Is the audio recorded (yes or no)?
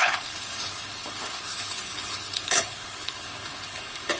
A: no